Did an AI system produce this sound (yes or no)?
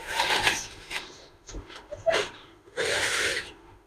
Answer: yes